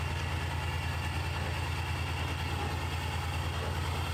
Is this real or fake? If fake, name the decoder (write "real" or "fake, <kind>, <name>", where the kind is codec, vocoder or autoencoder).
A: real